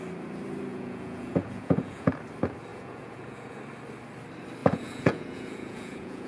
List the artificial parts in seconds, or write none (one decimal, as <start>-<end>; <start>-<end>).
0.7-2.1; 2.7-3.6; 4.6-6.3